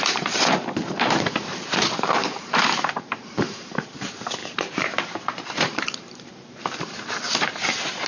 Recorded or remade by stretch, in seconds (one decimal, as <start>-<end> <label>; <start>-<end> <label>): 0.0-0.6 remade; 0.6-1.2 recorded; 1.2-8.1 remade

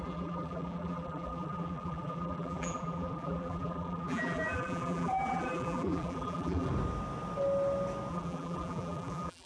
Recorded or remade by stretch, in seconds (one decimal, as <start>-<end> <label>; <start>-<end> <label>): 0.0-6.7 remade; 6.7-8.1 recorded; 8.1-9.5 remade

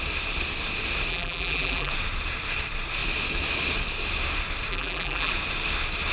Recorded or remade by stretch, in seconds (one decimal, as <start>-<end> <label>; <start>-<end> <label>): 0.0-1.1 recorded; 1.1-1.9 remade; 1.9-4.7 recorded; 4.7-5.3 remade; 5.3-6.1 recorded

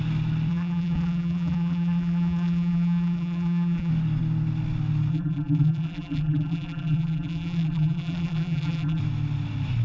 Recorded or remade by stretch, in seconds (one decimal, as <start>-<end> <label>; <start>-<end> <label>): 0.0-0.5 recorded; 0.5-3.9 remade; 3.9-5.1 recorded; 5.1-9.0 remade; 9.0-9.8 recorded